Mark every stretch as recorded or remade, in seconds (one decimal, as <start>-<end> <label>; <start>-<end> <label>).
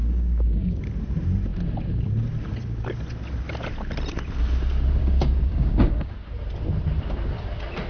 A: 0.0-0.8 remade; 0.8-5.0 recorded; 5.0-6.1 remade; 6.1-7.9 recorded